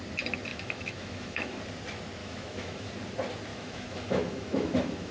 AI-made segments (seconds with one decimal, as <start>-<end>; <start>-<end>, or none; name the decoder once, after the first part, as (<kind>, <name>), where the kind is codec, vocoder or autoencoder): 0.5-1.6 (autoencoder, DAC-VAE); 2.2-2.9; 3.5-5.1